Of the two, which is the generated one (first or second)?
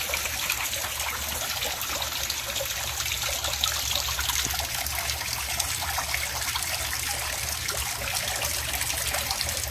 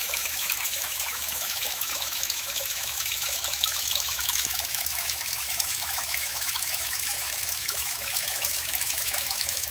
second